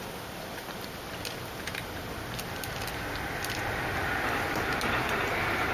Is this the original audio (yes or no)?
yes